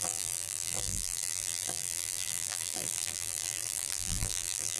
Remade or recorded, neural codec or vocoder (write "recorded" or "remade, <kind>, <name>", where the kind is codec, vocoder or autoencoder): remade, vocoder, BigVGAN v2